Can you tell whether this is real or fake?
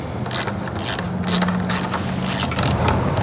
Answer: real